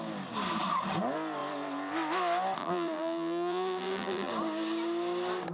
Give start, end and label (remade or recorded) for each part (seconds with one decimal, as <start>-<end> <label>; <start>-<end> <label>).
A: 0.0-2.6 recorded; 2.6-4.3 remade; 4.3-5.5 recorded